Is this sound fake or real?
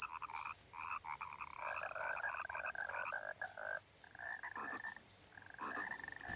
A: fake